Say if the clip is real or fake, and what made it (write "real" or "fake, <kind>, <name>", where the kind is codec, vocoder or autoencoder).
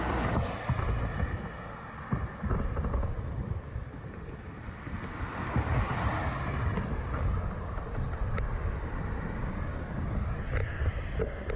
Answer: real